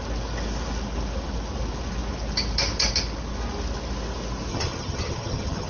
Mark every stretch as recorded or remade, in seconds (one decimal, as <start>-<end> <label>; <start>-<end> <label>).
0.0-4.5 recorded; 4.5-5.7 remade